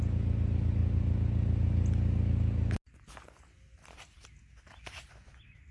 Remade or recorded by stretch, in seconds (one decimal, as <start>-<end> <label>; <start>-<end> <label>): 0.0-5.7 recorded

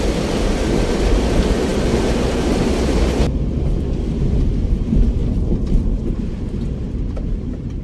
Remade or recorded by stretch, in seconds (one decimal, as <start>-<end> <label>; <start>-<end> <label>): 0.0-1.7 remade; 1.7-4.1 recorded; 4.1-7.8 remade

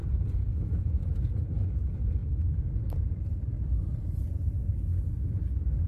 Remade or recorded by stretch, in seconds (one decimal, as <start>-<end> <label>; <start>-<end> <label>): 0.0-2.2 remade; 2.2-5.9 recorded

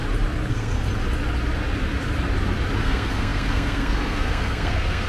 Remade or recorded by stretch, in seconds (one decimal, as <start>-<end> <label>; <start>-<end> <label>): 0.0-0.5 recorded; 0.5-0.9 remade; 0.9-2.8 recorded; 2.8-5.1 remade